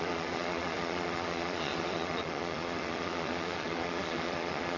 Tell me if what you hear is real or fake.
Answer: fake